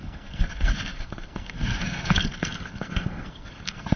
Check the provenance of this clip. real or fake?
fake